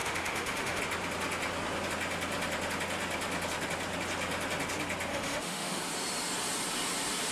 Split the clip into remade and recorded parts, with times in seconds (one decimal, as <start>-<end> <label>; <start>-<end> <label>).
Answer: 0.0-0.8 remade; 0.8-5.1 recorded; 5.1-5.8 remade; 5.8-7.3 recorded